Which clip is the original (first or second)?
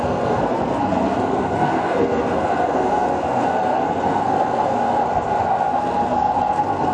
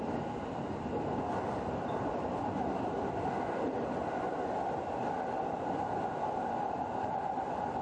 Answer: second